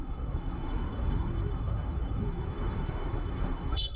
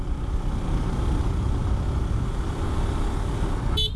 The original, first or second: second